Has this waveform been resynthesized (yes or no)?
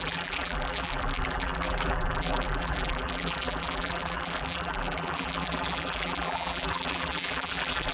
yes